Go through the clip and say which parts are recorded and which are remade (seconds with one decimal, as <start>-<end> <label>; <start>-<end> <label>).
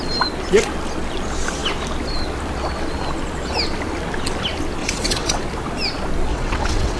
0.0-4.8 recorded; 4.8-5.4 remade; 5.4-6.3 recorded; 6.3-7.0 remade